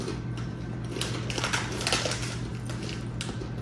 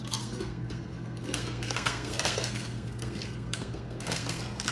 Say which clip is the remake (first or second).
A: second